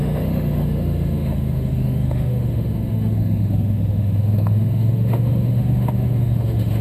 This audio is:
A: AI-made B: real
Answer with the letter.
A